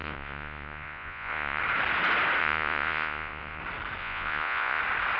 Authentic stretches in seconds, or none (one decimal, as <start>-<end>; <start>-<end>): 1.6-2.4; 3.6-4.0; 4.8-5.2